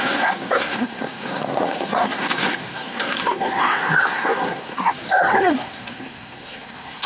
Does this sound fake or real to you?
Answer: fake